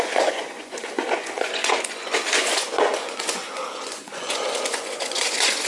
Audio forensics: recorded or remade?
remade